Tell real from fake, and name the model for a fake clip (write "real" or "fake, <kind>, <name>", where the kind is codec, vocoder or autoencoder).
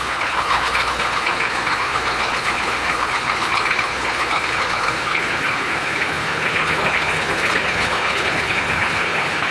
fake, codec, HILCodec